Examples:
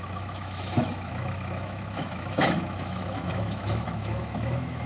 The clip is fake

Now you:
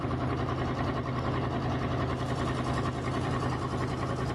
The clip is real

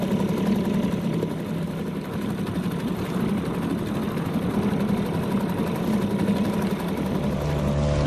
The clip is real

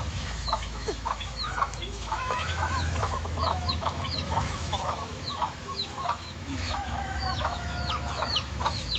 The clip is fake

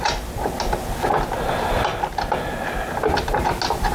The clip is real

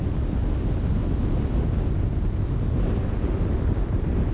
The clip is real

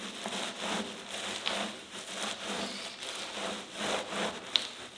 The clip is real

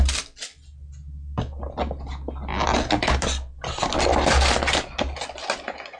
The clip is real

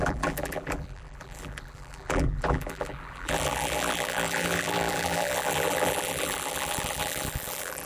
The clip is fake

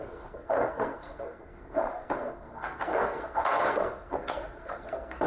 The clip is fake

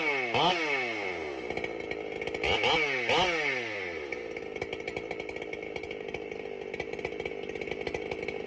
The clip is real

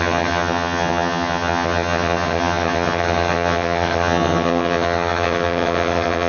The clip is fake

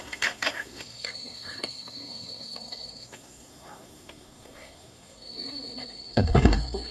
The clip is fake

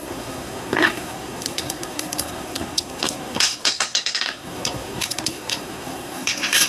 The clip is fake